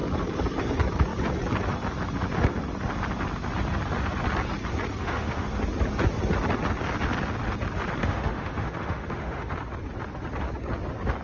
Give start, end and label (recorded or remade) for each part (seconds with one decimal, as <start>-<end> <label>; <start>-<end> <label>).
0.0-5.0 recorded; 5.0-5.5 remade; 5.5-8.0 recorded; 8.0-9.5 remade; 9.5-11.2 recorded